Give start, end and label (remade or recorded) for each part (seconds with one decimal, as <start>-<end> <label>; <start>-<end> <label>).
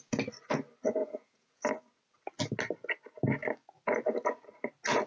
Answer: 0.0-1.0 recorded; 1.0-1.7 remade; 1.7-5.1 recorded